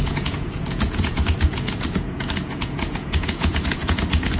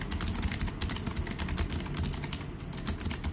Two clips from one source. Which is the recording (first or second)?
second